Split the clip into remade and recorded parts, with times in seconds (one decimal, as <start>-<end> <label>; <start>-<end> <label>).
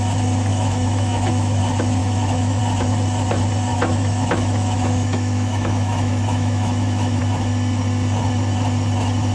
0.0-0.5 recorded; 0.5-1.6 remade; 1.6-2.0 recorded; 2.0-2.6 remade; 2.6-3.7 recorded; 3.7-7.2 remade; 7.2-9.3 recorded